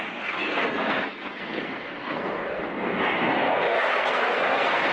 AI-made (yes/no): yes